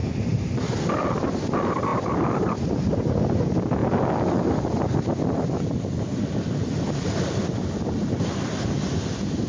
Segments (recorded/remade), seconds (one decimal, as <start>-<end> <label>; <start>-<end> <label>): 0.0-9.5 recorded

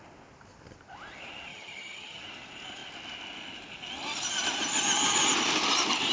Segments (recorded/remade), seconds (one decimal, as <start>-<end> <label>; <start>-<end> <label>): 0.0-1.5 recorded; 1.5-2.2 remade; 2.2-6.1 recorded